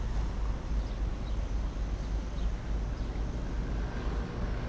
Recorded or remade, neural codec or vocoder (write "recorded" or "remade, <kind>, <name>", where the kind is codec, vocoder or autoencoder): recorded